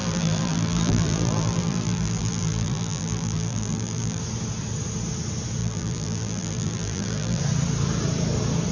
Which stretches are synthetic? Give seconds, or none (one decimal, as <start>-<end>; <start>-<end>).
0.0-4.2; 5.6-7.4